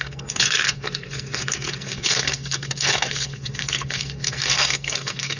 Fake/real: fake